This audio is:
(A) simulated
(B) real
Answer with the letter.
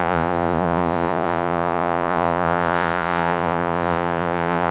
A